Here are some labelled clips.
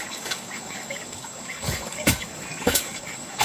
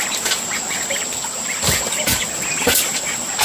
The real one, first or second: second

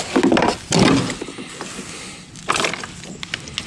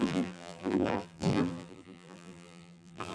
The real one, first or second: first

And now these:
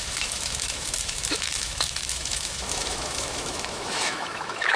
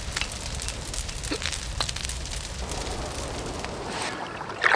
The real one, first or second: second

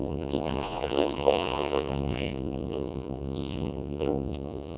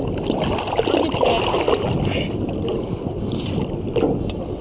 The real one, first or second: second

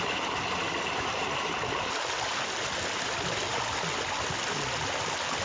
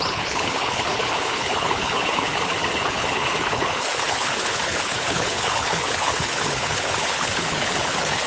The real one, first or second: first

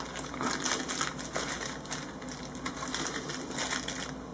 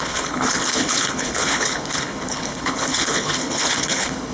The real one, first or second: first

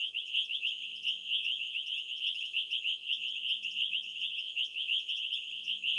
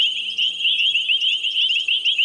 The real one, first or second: second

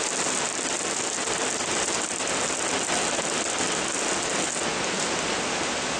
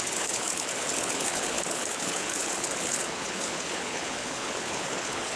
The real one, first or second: first